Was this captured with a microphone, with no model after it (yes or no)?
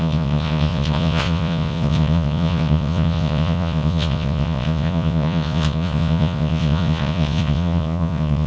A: no